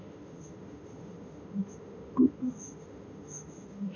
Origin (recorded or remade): remade